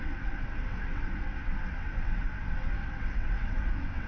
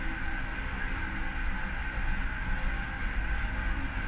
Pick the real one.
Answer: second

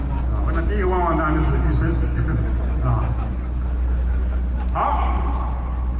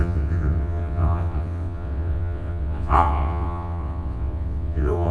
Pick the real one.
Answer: first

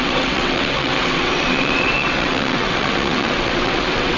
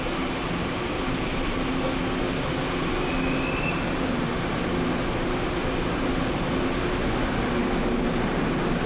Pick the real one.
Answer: second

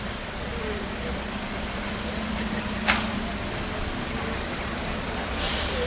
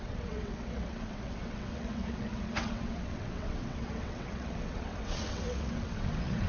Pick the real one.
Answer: first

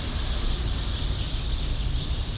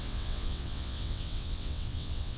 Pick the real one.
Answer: first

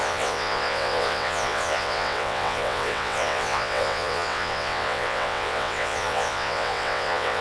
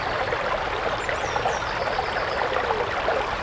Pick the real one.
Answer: second